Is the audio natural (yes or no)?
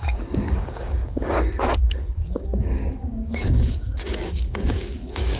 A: no